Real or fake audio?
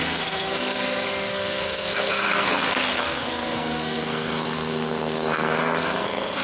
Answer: fake